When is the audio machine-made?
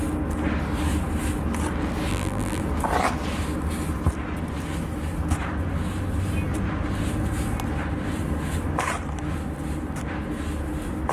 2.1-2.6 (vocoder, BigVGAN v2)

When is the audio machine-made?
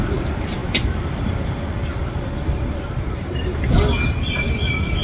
0.6-3.6 (vocoder, BigVGAN v2)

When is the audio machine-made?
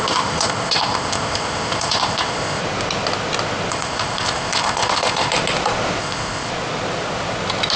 0.0-2.6 (codec, ZipCodec); 3.7-5.3; 6.0-6.5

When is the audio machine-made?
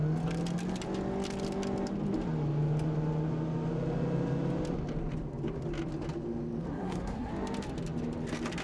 6.7-7.3 (codec, SNAC)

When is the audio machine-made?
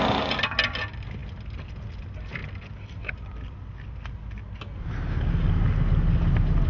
none